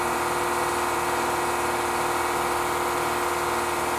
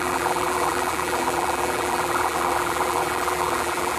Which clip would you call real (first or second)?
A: first